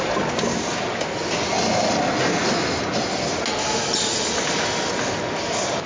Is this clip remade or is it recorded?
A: recorded